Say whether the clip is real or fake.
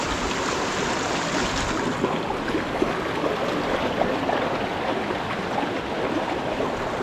real